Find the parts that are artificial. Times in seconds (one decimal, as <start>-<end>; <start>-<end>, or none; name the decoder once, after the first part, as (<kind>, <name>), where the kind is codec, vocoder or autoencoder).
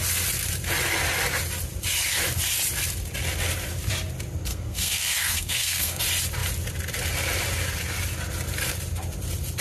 4.5-6.0 (codec, SNAC)